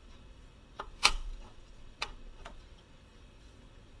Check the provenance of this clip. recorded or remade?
remade